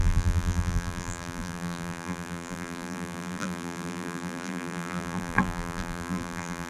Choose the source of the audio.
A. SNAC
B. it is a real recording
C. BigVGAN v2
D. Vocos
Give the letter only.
C